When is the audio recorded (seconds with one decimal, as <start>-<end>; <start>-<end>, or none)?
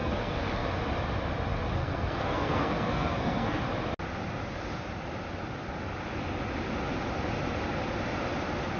0.7-1.8; 3.6-8.8